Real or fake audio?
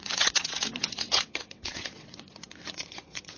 fake